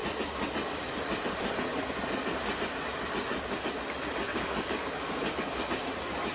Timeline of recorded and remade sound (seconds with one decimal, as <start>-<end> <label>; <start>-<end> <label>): 0.0-4.3 recorded; 4.3-5.6 remade; 5.6-6.3 recorded